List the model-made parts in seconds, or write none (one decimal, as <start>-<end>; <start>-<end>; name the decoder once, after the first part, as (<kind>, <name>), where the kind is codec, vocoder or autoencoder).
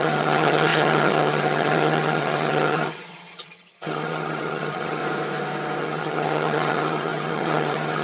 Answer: 0.0-5.0 (vocoder, HiFi-GAN); 5.8-8.0